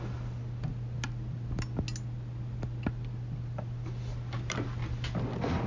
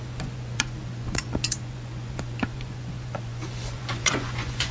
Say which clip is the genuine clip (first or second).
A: first